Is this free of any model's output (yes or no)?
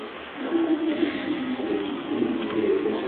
no